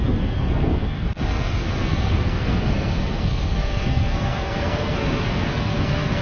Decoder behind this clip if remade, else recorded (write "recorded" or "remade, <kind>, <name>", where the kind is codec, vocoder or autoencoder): remade, codec, SNAC